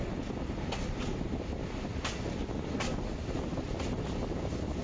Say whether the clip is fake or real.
real